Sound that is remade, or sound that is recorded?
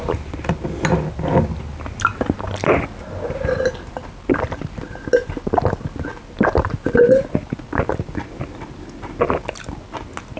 recorded